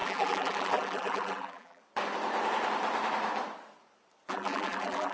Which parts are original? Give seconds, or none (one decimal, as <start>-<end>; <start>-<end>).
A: 1.8-4.3